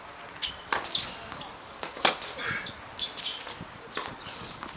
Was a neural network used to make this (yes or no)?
no